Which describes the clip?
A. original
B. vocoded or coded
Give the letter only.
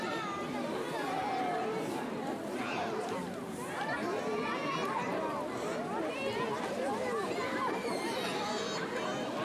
A